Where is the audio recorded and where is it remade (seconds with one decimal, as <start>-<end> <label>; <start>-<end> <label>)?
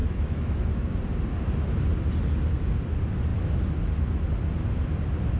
0.0-0.9 remade; 0.9-5.4 recorded